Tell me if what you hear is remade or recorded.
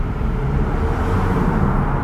recorded